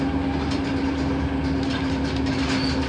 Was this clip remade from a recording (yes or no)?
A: no